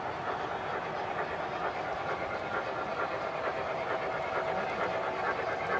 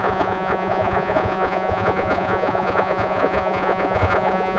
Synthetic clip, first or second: second